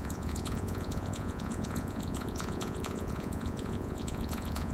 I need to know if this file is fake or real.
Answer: fake